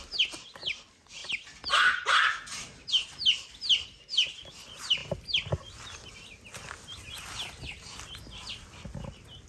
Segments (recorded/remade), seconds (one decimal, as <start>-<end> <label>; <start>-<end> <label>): 0.0-9.5 recorded